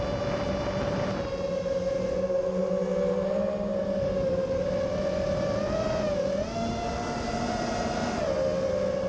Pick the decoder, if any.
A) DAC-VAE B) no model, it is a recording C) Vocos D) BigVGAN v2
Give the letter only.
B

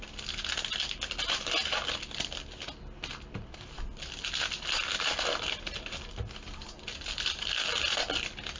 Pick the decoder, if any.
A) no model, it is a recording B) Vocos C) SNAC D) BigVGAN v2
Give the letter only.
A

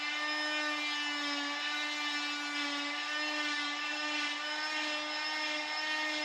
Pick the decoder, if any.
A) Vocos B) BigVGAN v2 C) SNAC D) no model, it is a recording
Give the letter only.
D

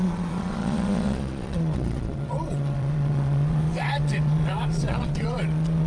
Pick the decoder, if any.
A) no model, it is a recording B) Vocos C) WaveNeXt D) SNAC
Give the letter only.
B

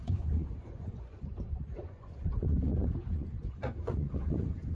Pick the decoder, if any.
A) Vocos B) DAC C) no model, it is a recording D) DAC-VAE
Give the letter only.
A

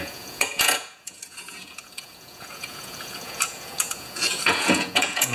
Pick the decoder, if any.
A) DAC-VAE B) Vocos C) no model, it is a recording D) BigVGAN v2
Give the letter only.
B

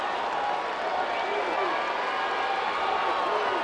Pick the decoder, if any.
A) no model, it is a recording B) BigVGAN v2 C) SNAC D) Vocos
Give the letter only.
A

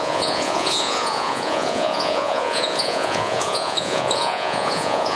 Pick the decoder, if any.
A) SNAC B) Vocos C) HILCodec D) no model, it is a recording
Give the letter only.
B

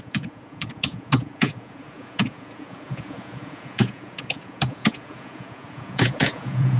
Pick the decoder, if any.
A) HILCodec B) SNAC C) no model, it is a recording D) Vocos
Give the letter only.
D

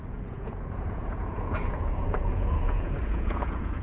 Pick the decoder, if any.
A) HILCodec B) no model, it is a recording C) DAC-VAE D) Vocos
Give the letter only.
D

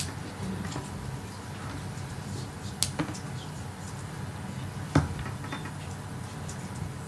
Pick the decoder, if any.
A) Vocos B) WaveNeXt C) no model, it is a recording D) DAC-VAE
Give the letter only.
C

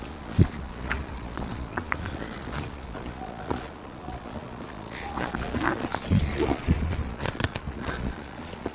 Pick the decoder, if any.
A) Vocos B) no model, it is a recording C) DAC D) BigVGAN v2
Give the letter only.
A